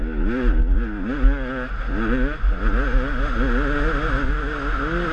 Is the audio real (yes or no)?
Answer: yes